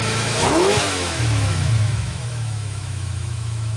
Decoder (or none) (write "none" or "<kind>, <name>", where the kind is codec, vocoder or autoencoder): autoencoder, DAC-VAE